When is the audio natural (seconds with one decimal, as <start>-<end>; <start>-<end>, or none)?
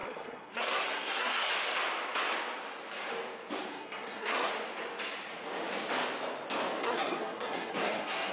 1.5-3.7; 4.5-6.8